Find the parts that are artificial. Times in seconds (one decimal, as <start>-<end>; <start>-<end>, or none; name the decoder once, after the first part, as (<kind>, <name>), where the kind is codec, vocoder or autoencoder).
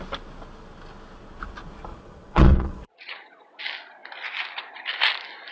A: 1.9-3.6 (vocoder, Vocos)